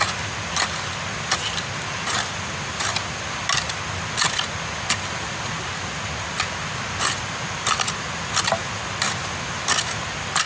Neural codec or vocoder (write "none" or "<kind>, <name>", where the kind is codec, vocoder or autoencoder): none